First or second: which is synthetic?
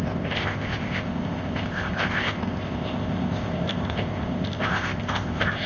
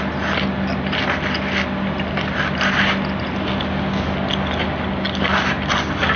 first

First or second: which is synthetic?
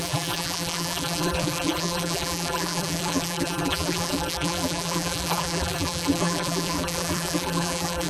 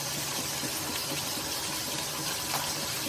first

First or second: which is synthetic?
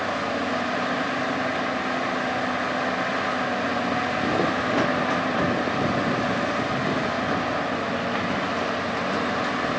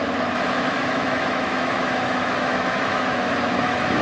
second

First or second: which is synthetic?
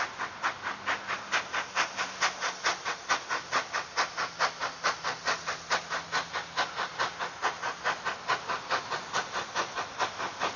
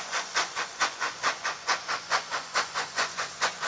second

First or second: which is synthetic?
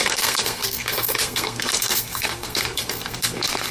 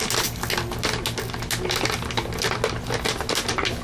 first